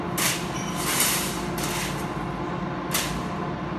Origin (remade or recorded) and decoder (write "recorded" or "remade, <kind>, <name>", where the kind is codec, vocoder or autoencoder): recorded